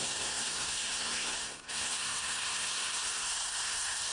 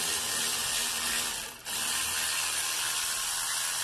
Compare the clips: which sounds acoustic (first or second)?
second